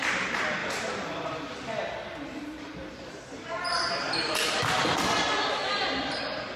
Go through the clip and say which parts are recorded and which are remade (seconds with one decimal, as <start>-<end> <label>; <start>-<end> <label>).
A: 0.0-0.6 recorded; 0.6-4.6 remade; 4.6-6.6 recorded